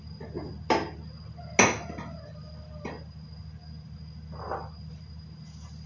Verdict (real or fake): real